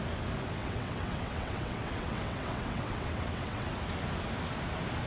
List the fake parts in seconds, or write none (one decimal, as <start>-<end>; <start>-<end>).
0.6-3.7